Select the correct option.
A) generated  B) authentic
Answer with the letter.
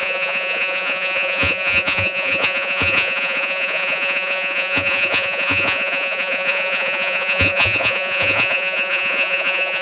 A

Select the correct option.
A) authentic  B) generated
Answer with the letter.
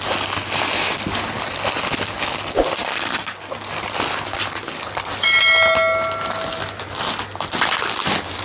A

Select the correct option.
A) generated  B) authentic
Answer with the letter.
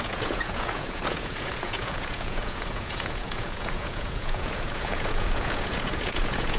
A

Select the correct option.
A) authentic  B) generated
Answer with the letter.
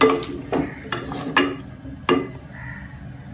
A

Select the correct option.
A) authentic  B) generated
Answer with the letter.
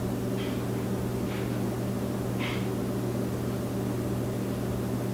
A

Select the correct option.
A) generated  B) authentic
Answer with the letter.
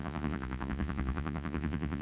A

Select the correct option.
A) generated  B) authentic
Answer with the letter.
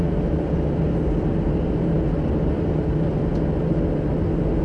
B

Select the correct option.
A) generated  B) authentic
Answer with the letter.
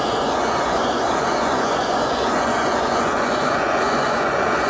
A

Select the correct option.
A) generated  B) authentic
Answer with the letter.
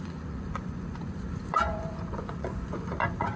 A